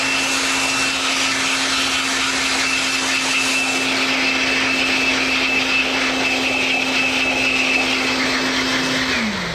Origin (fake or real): real